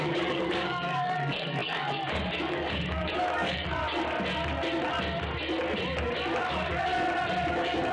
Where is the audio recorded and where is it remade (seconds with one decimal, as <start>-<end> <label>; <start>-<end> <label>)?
0.0-3.8 remade; 3.8-6.4 recorded; 6.4-6.9 remade; 6.9-7.5 recorded; 7.5-7.9 remade